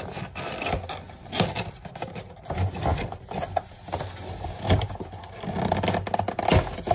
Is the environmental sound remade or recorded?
recorded